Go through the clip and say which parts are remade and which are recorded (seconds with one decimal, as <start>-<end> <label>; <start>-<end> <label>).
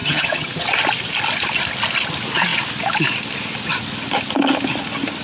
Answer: 0.0-0.5 remade; 0.5-5.2 recorded